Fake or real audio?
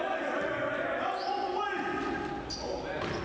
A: real